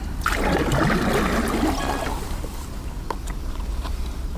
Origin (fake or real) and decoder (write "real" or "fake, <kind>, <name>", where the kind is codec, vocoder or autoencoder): real